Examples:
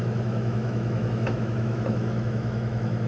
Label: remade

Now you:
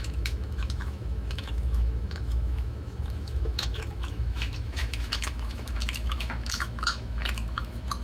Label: remade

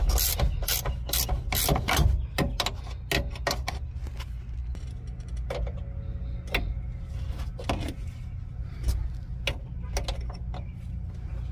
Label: recorded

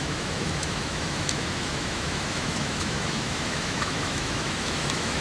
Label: remade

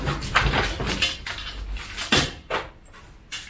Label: recorded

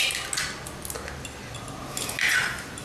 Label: recorded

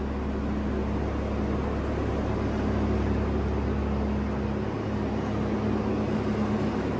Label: recorded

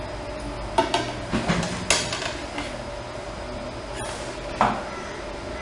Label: recorded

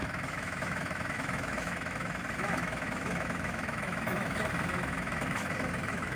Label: remade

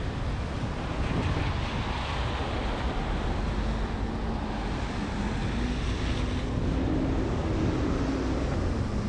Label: recorded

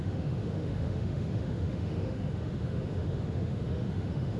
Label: remade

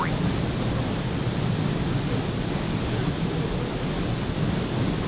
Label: recorded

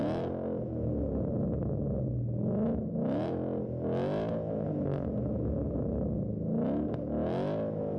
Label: recorded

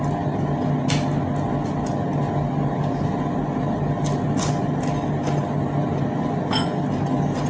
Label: recorded